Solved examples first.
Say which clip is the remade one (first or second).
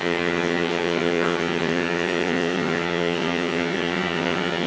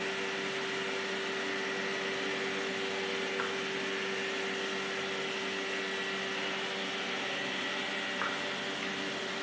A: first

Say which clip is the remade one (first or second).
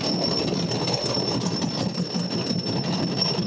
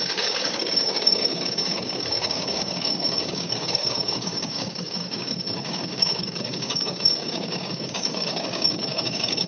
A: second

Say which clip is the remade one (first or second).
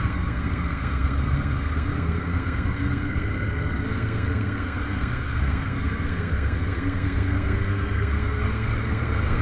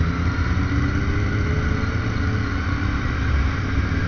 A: first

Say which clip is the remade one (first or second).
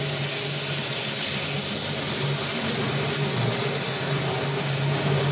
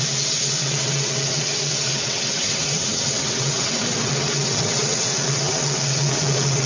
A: second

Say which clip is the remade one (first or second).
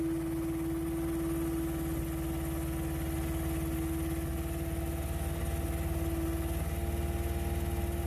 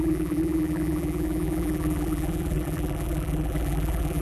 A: second